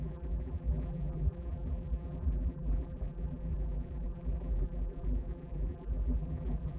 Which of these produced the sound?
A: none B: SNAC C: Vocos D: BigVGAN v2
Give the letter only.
D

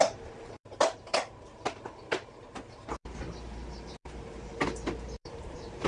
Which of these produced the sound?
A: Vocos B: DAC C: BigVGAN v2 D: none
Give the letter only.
C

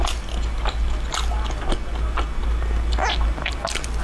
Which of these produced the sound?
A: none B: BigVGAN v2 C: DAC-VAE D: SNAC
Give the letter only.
A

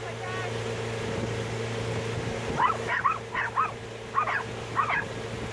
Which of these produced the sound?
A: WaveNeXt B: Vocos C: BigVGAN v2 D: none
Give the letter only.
D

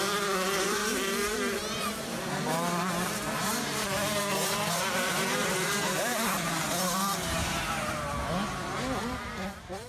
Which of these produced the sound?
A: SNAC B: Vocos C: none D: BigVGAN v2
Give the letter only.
D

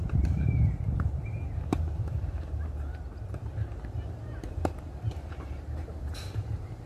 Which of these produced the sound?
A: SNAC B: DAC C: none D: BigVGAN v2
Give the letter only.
D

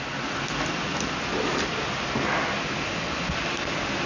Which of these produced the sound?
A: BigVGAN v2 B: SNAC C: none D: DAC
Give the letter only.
C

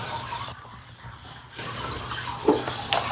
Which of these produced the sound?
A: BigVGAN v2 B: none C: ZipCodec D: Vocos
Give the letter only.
A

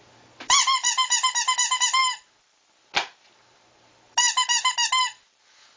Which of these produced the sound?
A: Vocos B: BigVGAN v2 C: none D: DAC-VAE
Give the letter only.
C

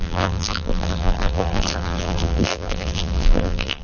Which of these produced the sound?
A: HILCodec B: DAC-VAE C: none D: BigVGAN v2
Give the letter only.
D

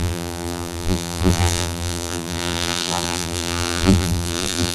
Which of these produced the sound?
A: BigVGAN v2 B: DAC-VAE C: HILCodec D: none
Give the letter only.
A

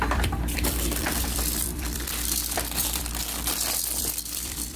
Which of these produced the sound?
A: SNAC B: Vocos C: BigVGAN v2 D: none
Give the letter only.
C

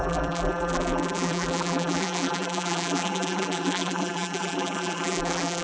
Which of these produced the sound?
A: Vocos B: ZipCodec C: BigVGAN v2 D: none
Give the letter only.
C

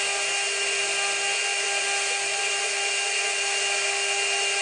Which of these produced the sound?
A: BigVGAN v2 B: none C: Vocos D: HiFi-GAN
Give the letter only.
B